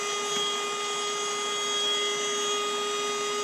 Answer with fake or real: real